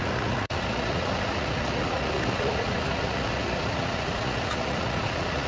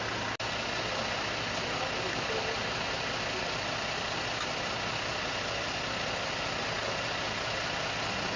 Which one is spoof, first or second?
first